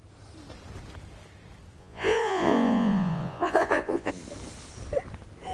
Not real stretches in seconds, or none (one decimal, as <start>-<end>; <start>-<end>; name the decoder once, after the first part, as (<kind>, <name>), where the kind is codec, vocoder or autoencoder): 1.8-4.1 (vocoder, Vocos)